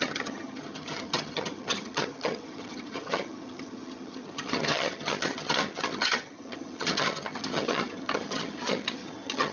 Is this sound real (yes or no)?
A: no